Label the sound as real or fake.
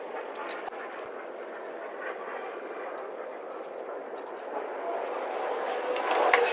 real